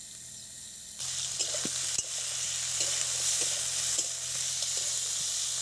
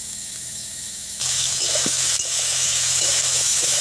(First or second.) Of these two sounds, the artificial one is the second